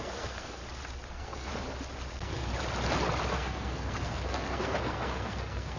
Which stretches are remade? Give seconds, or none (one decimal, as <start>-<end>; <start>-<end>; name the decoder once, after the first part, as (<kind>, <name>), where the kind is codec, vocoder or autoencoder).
0.0-0.6 (codec, SNAC); 1.1-1.5; 2.1-2.5; 3.3-5.8